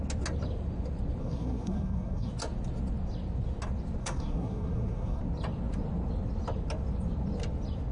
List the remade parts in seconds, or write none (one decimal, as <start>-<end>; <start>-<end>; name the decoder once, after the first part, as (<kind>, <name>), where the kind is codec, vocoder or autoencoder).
1.2-2.3 (codec, SNAC); 4.0-5.2

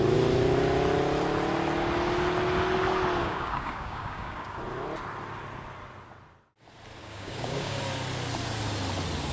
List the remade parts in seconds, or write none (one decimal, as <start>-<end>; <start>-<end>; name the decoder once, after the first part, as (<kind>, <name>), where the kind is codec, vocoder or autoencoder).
3.2-4.6 (codec, DAC); 7.0-7.8

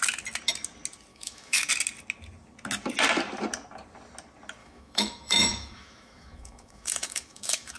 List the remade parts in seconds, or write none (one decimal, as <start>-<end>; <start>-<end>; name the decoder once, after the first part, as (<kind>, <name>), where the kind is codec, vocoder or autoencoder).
1.1-1.7 (autoencoder, DAC-VAE); 4.6-7.8

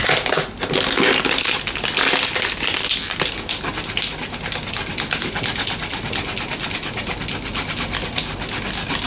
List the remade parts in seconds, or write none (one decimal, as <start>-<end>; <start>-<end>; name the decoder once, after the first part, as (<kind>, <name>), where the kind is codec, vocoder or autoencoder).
none

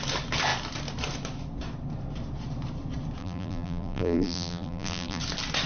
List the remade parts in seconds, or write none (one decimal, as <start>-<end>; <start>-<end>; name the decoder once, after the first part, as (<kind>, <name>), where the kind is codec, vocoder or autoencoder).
3.2-5.2 (vocoder, BigVGAN v2)

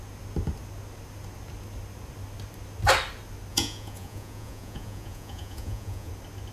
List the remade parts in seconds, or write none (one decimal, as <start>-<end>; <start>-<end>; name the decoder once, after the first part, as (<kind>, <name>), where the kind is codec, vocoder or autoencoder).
3.5-6.1 (vocoder, Vocos)

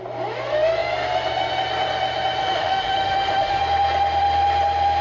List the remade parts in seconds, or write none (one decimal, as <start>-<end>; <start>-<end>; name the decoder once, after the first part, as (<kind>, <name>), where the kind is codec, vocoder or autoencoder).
2.4-3.6 (autoencoder, DAC-VAE)

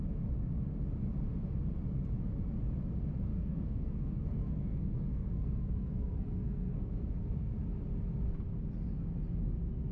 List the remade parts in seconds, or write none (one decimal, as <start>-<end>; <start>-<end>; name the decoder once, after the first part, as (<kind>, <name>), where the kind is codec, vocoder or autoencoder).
3.3-7.6 (codec, SNAC)